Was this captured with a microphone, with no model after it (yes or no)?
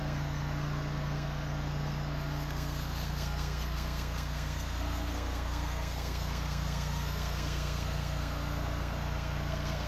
no